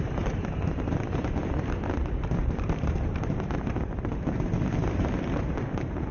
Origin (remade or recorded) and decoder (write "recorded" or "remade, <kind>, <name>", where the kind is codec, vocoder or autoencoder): remade, vocoder, BigVGAN v2